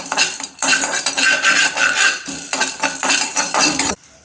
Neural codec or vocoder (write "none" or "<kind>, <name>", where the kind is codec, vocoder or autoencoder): vocoder, BigVGAN v2